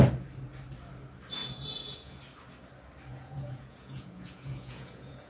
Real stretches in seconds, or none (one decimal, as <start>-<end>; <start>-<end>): 0.0-1.4; 2.2-3.1